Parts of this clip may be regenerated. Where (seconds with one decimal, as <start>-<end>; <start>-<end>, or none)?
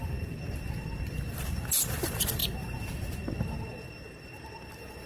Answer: 0.0-5.1